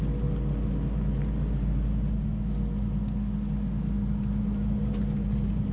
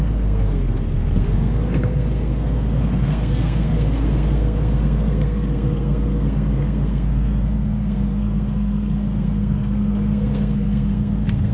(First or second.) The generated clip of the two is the second